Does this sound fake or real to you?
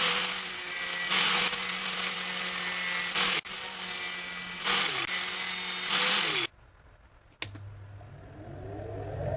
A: real